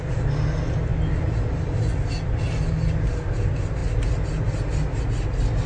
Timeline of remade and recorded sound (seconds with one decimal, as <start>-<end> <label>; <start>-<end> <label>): 0.0-5.7 recorded